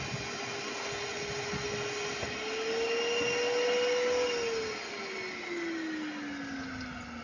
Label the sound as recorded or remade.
recorded